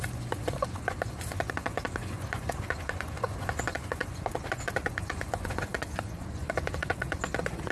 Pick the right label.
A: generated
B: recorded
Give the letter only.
A